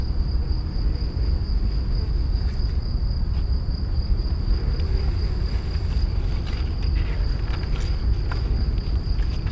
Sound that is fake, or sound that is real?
real